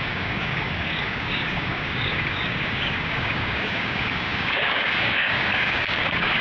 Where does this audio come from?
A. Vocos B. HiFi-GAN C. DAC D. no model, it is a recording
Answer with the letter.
C